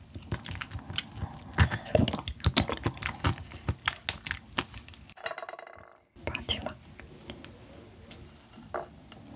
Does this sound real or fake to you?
real